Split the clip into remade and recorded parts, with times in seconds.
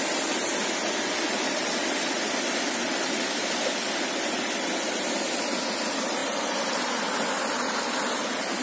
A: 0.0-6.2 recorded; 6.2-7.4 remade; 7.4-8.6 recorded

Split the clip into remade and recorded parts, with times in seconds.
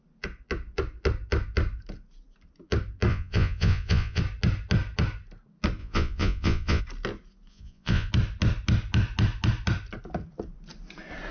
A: 0.0-3.1 recorded; 3.1-4.2 remade; 4.2-5.8 recorded; 5.8-6.8 remade; 6.8-7.5 recorded; 7.5-8.1 remade; 8.1-11.3 recorded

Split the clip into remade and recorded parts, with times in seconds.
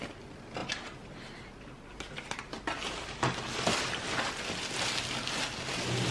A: 0.0-6.1 recorded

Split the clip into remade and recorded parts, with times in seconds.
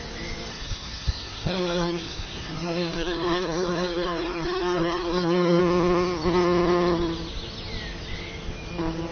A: 0.0-0.5 recorded; 0.5-5.6 remade; 5.6-9.1 recorded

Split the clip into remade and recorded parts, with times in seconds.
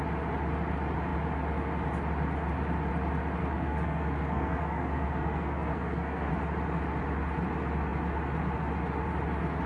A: 0.0-3.4 recorded; 3.4-6.3 remade; 6.3-9.7 recorded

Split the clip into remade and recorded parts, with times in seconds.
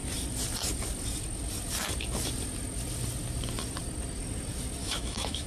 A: 0.0-4.8 recorded; 4.8-5.5 remade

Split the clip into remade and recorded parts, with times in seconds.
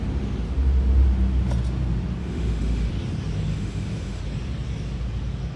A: 0.0-2.2 recorded; 2.2-2.9 remade; 2.9-3.5 recorded; 3.5-4.2 remade; 4.2-5.6 recorded